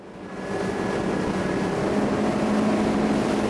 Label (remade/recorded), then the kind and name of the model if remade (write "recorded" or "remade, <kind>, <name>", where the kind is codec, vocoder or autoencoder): recorded